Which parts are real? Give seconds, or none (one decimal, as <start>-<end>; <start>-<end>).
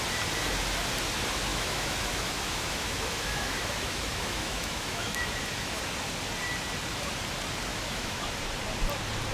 0.0-1.5; 5.8-7.7; 8.3-9.3